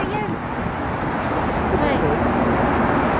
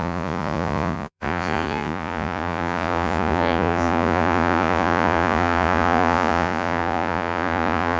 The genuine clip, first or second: first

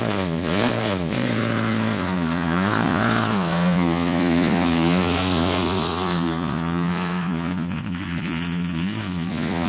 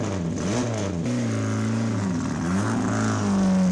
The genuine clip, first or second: second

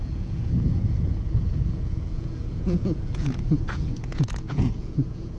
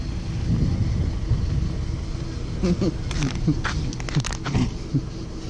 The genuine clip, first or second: second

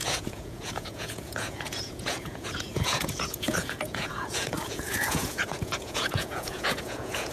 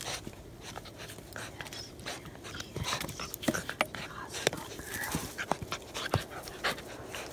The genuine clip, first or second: second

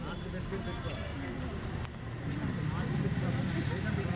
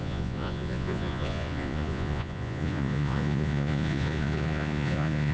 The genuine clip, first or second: first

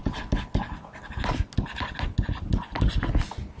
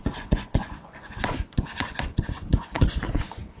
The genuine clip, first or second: first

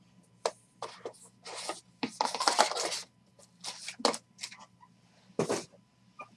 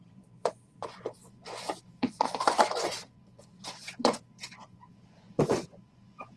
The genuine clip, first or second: first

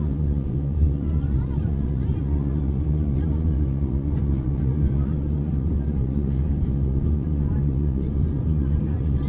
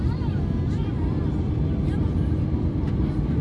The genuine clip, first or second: second